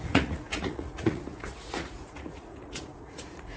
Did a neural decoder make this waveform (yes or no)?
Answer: yes